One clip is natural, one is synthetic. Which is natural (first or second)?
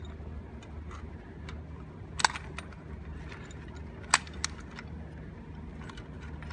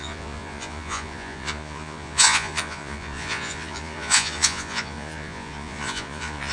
first